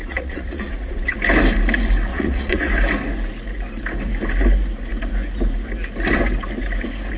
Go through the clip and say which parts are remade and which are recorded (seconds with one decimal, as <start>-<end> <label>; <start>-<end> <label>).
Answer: 0.0-1.1 remade; 1.1-2.1 recorded; 2.1-2.7 remade; 2.7-7.2 recorded